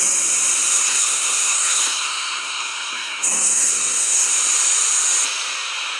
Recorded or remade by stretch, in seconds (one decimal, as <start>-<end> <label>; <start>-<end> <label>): 0.0-0.7 recorded; 0.7-4.3 remade; 4.3-6.0 recorded

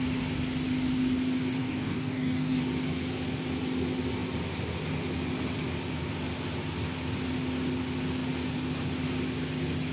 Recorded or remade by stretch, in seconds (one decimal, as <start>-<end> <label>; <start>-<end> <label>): 0.0-1.6 recorded; 1.6-2.6 remade; 2.6-9.9 recorded